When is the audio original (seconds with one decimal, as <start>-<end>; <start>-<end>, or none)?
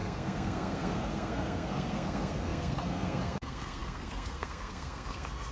none